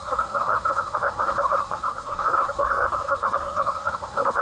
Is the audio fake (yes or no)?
yes